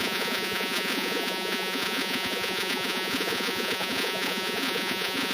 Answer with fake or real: fake